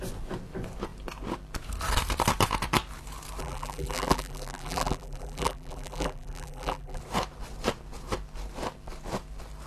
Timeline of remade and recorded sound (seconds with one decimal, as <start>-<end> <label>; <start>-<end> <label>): 0.0-3.4 recorded; 3.4-7.0 remade; 7.0-9.7 recorded

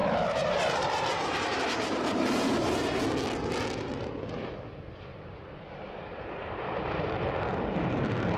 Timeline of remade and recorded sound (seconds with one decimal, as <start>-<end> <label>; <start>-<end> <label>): 0.0-3.0 remade; 3.0-5.1 recorded; 5.1-7.1 remade; 7.1-8.4 recorded

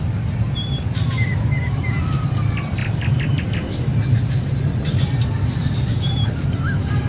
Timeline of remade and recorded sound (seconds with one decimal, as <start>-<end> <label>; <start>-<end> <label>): 0.0-7.1 recorded

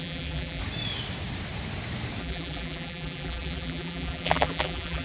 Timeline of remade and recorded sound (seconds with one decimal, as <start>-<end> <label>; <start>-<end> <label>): 0.0-0.6 remade; 0.6-2.2 recorded; 2.2-5.0 remade

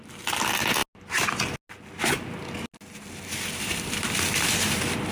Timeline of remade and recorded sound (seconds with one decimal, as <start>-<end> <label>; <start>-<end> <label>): 0.0-0.8 remade; 0.8-3.6 recorded; 3.6-5.1 remade

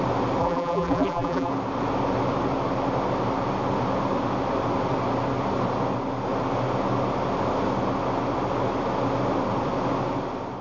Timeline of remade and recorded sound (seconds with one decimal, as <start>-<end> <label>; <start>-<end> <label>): 0.0-0.4 recorded; 0.4-1.5 remade; 1.5-10.6 recorded